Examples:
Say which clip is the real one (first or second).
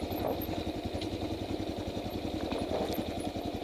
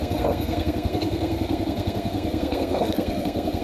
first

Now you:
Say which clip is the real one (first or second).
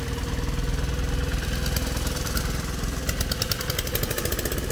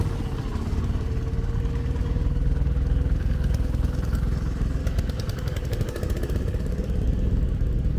first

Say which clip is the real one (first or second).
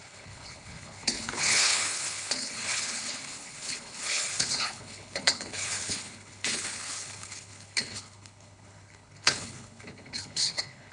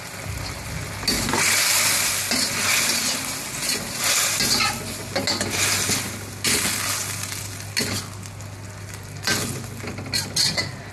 second